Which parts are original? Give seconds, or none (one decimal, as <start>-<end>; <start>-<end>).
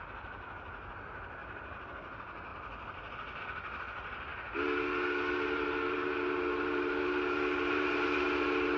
0.0-8.8